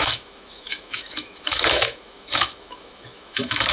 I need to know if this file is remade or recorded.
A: remade